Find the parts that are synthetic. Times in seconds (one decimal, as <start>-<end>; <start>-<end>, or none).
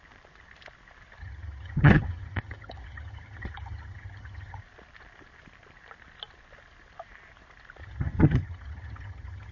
1.2-4.6; 7.8-9.5